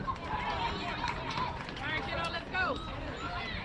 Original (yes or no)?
yes